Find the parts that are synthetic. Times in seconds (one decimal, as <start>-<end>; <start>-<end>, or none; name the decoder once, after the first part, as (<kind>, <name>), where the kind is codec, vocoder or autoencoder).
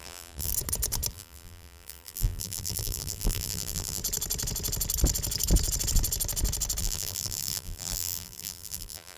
0.0-0.5 (vocoder, BigVGAN v2); 1.1-4.0; 6.8-9.2